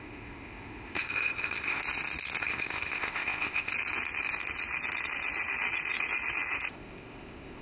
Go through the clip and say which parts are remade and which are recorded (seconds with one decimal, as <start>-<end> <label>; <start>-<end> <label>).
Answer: 0.0-1.8 remade; 1.8-2.4 recorded; 2.4-3.7 remade; 3.7-6.7 recorded; 6.7-7.6 remade